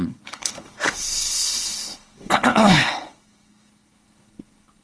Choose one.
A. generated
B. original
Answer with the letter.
A